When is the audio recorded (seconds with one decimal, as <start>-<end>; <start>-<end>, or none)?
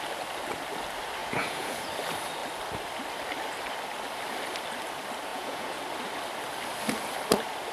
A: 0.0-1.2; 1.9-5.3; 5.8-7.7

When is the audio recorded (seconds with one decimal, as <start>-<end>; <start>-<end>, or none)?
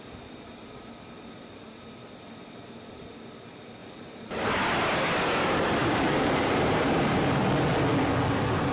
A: 0.0-3.8; 4.5-5.8; 7.4-8.7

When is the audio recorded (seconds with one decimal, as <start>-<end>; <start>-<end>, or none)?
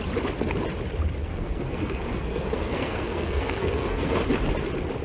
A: 0.0-1.2; 4.2-5.0